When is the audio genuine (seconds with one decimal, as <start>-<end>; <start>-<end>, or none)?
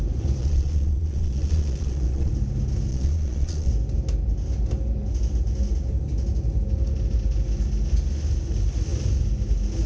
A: 0.0-0.4; 2.3-2.9; 3.7-9.9